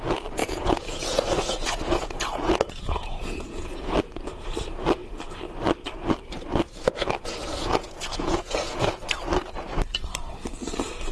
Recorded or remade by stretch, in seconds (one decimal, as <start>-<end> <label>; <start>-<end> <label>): 0.0-0.4 recorded; 0.4-3.9 remade; 3.9-7.5 recorded; 7.5-9.0 remade; 9.0-11.1 recorded